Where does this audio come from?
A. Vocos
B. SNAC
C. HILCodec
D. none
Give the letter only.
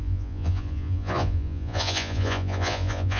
A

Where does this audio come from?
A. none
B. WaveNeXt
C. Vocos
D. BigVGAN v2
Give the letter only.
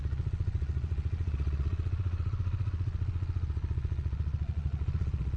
C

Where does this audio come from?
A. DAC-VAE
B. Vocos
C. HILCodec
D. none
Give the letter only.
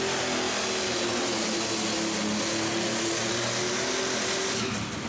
D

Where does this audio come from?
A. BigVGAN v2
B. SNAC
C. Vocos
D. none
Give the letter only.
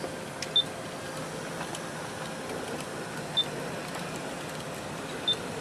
D